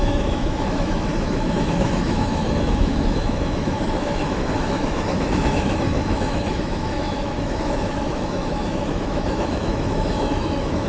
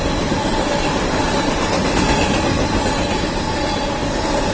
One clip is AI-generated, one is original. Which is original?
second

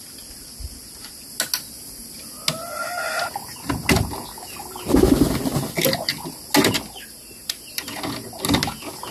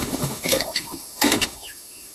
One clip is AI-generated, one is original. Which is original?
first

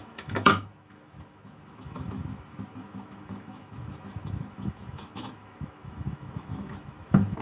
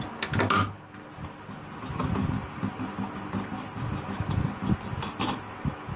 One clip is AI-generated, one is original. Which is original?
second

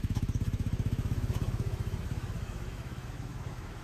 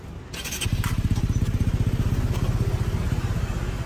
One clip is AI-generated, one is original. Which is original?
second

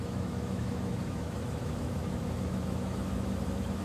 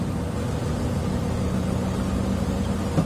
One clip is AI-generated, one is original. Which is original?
second